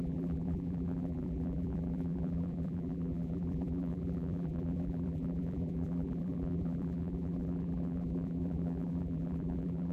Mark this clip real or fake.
fake